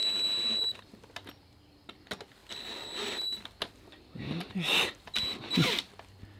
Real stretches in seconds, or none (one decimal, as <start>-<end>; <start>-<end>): 0.0-6.4